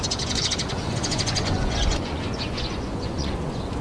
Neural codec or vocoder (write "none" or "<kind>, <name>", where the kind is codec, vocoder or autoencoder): vocoder, Vocos